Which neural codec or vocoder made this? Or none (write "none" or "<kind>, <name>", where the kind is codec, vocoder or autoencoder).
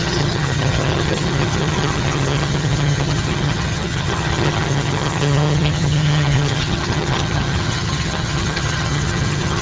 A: vocoder, HiFi-GAN